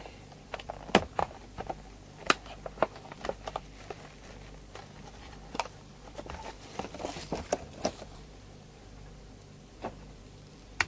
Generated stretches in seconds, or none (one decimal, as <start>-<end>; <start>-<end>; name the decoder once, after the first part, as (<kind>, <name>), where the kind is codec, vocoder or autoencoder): 0.0-2.2 (vocoder, BigVGAN v2); 3.2-10.9